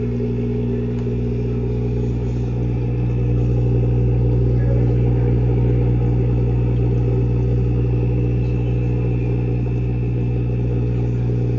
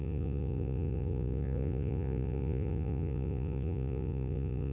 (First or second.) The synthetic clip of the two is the second